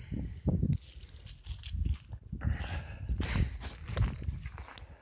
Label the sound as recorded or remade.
recorded